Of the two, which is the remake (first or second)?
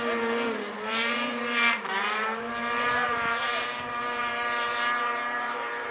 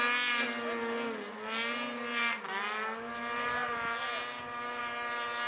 first